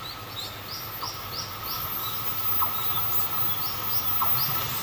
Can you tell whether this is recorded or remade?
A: recorded